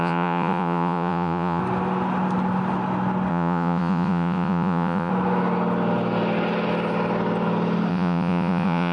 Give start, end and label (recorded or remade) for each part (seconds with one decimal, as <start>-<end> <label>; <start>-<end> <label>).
0.0-1.6 remade; 1.6-3.3 recorded; 3.3-5.1 remade; 5.1-7.9 recorded; 7.9-8.9 remade